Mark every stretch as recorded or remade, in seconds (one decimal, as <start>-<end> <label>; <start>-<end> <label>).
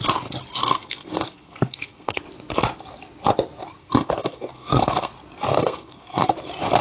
0.0-0.6 recorded; 0.6-2.2 remade; 2.2-3.8 recorded; 3.8-5.1 remade; 5.1-5.5 recorded; 5.5-6.3 remade; 6.3-6.8 recorded